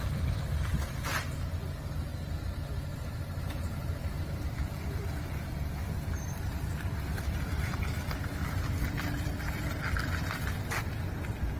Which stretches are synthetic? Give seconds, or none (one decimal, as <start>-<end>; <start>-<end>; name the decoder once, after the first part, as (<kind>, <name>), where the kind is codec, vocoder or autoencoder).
0.0-2.1 (vocoder, BigVGAN v2); 3.4-11.6